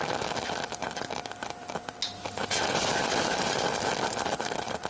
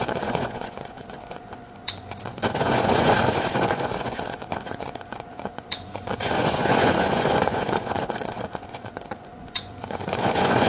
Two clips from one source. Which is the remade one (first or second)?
second